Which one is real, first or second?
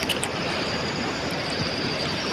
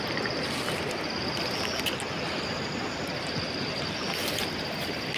second